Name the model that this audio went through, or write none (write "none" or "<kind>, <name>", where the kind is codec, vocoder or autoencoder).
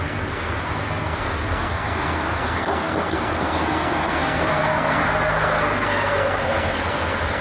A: codec, SNAC